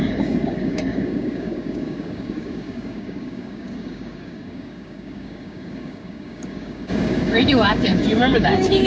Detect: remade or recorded remade